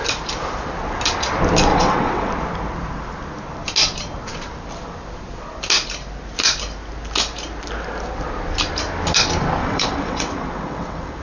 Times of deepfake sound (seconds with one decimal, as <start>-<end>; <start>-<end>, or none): 1.7-2.3; 9.6-11.2